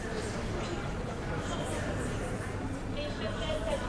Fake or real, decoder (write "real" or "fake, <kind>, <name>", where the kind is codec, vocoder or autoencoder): fake, vocoder, BigVGAN v2